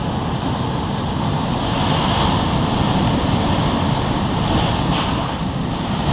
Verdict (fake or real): real